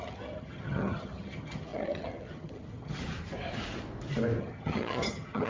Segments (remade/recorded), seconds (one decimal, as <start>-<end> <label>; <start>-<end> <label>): 0.0-3.0 remade; 3.0-4.4 recorded; 4.4-5.5 remade